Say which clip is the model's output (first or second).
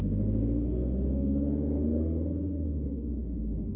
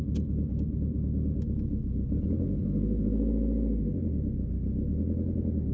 first